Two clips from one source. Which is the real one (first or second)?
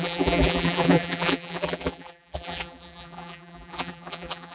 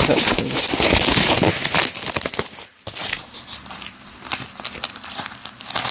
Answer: second